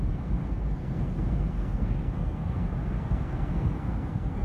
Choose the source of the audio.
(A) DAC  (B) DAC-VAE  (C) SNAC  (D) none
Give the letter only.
C